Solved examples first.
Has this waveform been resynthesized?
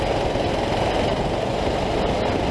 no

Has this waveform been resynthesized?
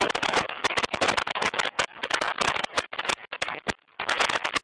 no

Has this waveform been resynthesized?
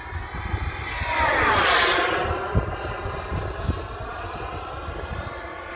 no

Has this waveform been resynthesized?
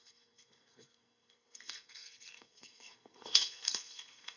yes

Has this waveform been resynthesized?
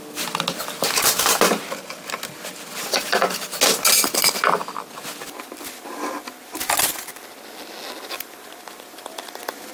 no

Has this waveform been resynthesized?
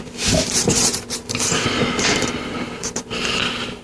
yes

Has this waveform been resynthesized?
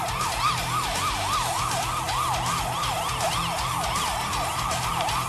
no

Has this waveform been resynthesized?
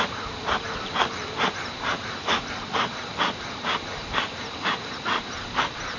yes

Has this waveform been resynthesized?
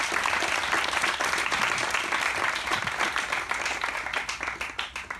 no